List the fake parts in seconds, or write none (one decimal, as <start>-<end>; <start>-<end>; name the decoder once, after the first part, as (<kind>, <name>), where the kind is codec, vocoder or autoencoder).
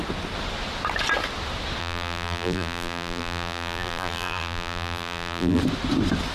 1.8-5.6 (vocoder, BigVGAN v2)